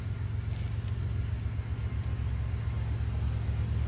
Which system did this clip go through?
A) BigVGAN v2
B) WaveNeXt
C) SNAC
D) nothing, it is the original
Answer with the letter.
D